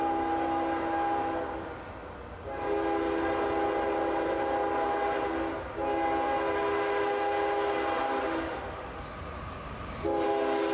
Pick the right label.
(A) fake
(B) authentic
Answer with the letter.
B